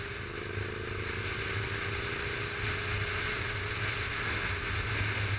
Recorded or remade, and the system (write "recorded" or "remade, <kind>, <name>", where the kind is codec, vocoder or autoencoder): recorded